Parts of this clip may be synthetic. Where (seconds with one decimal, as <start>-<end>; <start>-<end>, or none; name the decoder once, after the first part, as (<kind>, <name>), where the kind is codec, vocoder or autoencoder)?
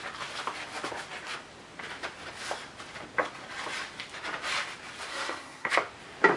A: 5.1-5.7 (codec, SNAC)